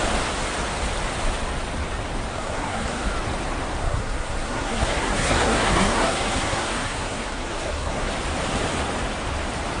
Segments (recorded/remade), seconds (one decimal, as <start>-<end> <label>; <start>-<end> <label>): 0.0-2.3 recorded; 2.3-3.1 remade; 3.1-3.8 recorded; 3.8-8.1 remade; 8.1-9.8 recorded